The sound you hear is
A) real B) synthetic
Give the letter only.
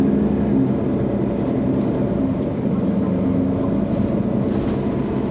A